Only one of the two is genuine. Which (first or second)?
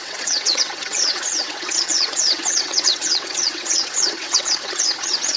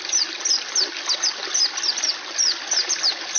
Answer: second